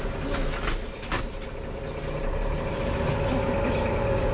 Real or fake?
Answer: real